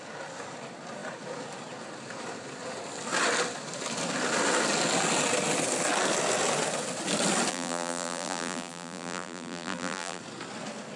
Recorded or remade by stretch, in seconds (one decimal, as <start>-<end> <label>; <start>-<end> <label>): 0.0-7.5 recorded; 7.5-10.2 remade; 10.2-11.0 recorded